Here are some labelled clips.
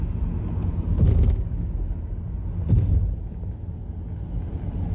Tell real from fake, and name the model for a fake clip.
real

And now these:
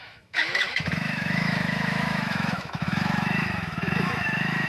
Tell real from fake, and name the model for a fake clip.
fake, autoencoder, DAC-VAE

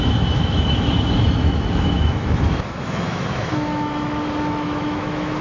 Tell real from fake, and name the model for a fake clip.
fake, autoencoder, DAC-VAE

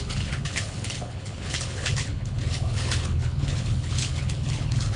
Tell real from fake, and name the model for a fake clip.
fake, codec, HILCodec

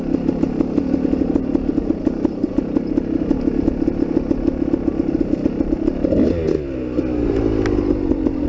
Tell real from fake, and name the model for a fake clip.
real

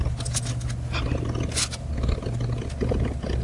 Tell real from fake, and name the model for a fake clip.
real